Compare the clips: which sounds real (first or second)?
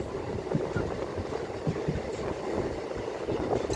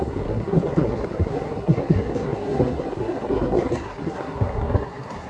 first